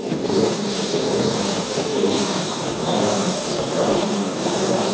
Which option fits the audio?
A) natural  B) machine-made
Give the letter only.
B